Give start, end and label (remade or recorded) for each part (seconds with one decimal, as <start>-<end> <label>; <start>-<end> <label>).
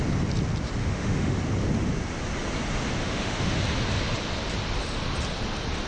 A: 0.0-0.8 recorded; 0.8-1.4 remade; 1.4-3.0 recorded; 3.0-3.6 remade; 3.6-5.9 recorded